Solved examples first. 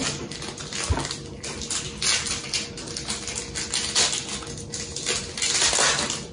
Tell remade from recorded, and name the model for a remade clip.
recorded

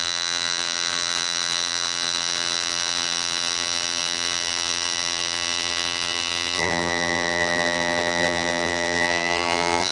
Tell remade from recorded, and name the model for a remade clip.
remade, vocoder, BigVGAN v2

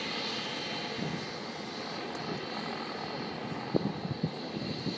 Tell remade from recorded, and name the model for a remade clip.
recorded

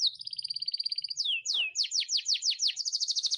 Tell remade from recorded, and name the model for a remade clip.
remade, autoencoder, DAC-VAE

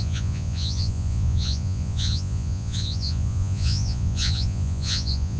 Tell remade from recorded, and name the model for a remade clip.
remade, vocoder, Vocos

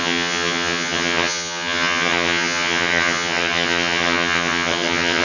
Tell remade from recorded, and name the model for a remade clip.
remade, vocoder, HiFi-GAN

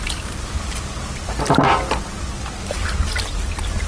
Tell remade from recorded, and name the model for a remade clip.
recorded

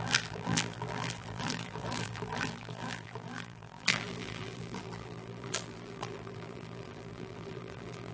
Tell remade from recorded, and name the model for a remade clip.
remade, vocoder, BigVGAN v2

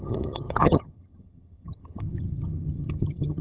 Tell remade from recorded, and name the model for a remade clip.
remade, vocoder, HiFi-GAN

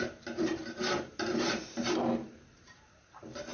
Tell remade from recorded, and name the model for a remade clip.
remade, vocoder, BigVGAN v2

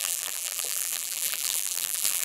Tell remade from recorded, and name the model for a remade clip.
remade, vocoder, BigVGAN v2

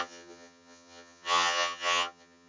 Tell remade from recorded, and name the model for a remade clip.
remade, vocoder, HiFi-GAN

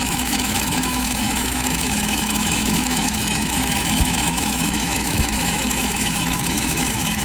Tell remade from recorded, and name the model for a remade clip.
remade, autoencoder, DAC-VAE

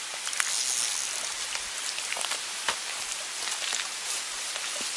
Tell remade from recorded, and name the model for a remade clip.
recorded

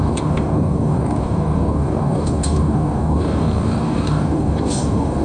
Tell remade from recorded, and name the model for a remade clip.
remade, codec, DAC